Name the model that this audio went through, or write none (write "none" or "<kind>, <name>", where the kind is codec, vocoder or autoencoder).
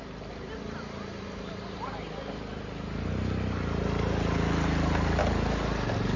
none